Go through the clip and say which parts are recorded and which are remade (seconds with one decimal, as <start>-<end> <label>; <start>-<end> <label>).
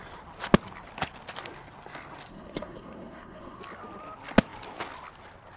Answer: 0.0-2.3 recorded; 2.3-3.6 remade; 3.6-5.6 recorded